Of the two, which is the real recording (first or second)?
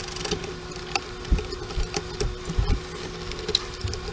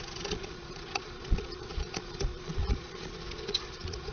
first